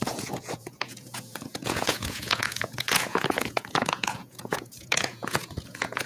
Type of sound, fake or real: fake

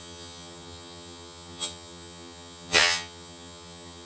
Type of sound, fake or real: fake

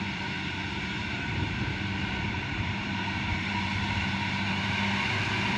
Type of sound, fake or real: fake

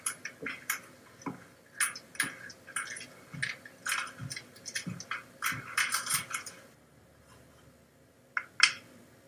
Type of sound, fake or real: real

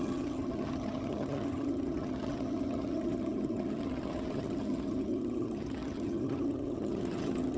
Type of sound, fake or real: fake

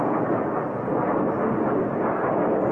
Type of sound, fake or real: real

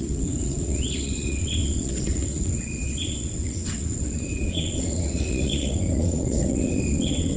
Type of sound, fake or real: fake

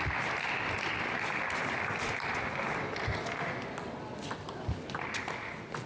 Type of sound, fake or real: real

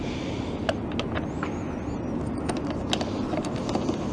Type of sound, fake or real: real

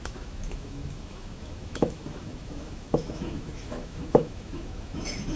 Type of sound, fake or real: fake